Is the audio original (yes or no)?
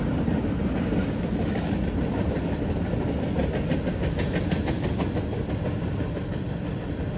yes